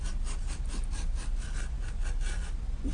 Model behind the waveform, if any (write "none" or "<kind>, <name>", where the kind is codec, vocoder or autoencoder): none